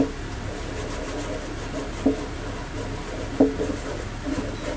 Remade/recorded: recorded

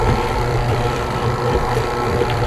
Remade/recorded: remade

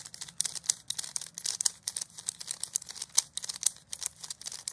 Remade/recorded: recorded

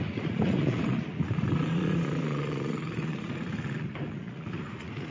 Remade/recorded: remade